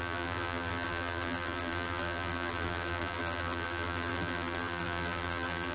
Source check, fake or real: fake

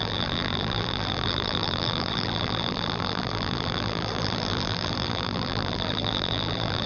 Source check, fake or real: fake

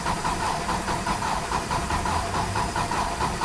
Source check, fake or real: fake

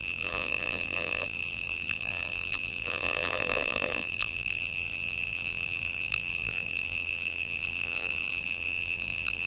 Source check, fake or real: fake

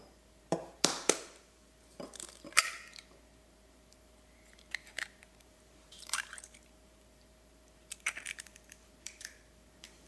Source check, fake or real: fake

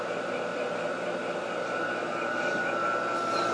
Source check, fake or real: fake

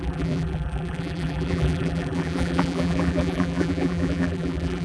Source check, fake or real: fake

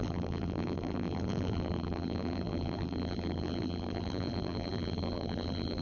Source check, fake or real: fake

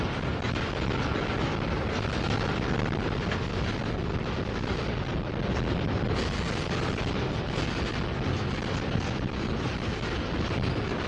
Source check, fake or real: real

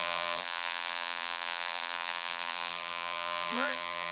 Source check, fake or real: fake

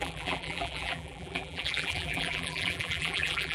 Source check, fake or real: fake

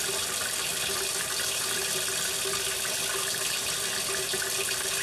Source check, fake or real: real